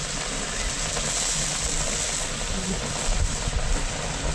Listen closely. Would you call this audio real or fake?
real